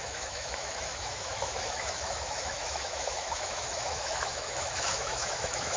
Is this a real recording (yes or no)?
no